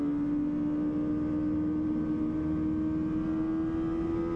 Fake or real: real